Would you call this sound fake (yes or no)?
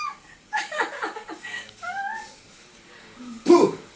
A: yes